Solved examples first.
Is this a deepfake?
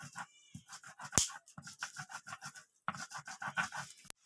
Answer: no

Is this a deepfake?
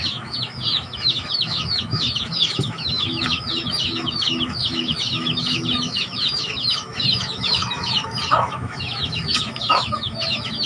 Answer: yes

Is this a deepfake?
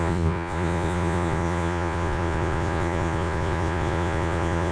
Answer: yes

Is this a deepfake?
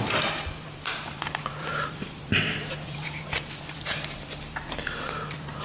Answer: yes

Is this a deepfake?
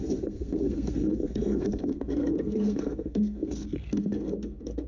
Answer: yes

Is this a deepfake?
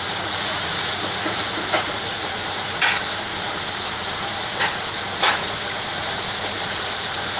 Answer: yes